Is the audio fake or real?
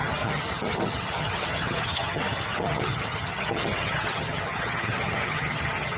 fake